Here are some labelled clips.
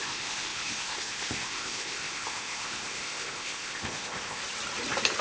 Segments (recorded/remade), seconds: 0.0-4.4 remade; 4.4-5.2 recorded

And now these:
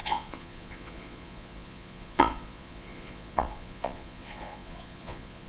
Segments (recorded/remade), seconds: 0.0-5.5 remade

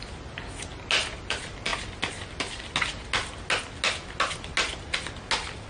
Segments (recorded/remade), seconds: 0.0-5.7 recorded

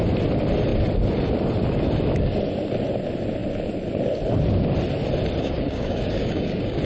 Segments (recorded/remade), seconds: 0.0-5.4 recorded; 5.4-6.8 remade

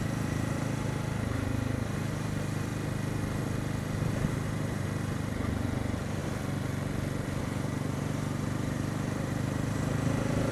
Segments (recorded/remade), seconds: 0.0-2.7 remade; 2.7-3.8 recorded; 3.8-6.2 remade; 6.2-7.4 recorded; 7.4-10.5 remade

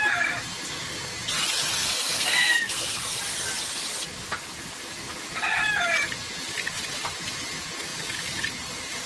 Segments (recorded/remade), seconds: 0.0-1.8 recorded; 1.8-3.2 remade; 3.2-9.1 recorded

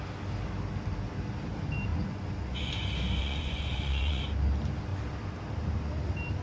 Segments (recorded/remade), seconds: 0.0-1.9 recorded; 1.9-2.7 remade; 2.7-3.2 recorded; 3.2-4.2 remade; 4.2-6.4 recorded

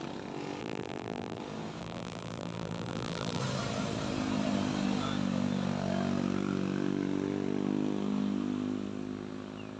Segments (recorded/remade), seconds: 0.0-0.6 recorded; 0.6-1.4 remade; 1.4-1.8 recorded; 1.8-3.4 remade; 3.4-9.8 recorded